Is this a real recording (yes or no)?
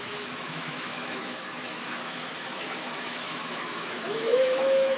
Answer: no